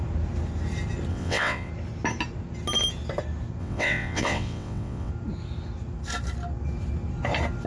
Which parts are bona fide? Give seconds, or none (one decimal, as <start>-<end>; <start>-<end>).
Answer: 0.0-1.1; 1.7-3.6; 5.1-7.7